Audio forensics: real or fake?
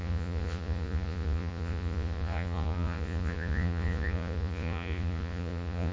fake